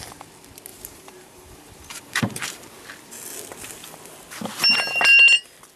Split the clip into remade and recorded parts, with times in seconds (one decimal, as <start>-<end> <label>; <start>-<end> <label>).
0.0-0.7 recorded; 0.7-2.6 remade; 2.6-5.8 recorded